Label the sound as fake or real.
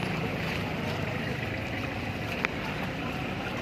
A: real